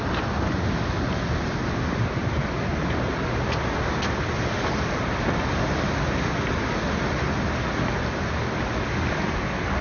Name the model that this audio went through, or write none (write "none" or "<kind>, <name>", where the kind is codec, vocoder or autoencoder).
none